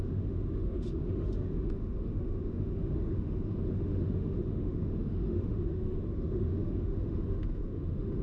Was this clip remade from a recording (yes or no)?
yes